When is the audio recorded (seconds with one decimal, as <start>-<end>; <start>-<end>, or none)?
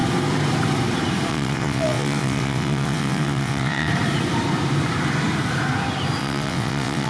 0.0-1.3; 3.9-6.2